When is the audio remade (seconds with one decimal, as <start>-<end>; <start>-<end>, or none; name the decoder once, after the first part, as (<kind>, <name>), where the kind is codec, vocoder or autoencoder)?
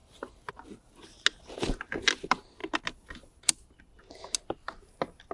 0.0-0.5 (vocoder, BigVGAN v2)